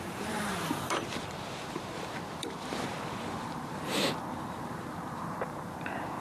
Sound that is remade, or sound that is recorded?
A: remade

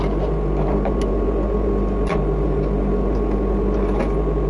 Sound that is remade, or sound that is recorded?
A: recorded